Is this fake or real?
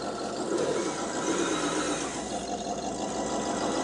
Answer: real